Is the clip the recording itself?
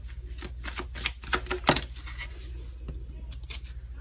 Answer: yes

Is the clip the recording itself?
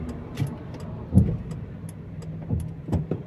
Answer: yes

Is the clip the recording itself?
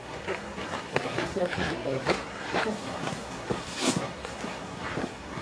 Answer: no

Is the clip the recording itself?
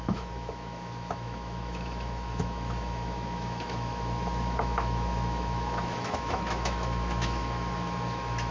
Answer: no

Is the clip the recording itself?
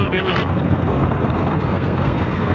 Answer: no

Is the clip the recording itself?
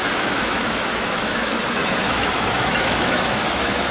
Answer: no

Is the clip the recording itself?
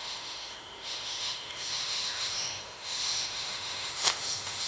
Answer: no